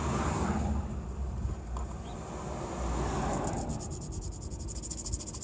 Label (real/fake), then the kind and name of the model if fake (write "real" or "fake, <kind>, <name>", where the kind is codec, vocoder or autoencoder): real